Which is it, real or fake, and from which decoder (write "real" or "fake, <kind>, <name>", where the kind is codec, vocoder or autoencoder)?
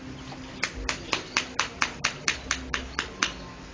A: real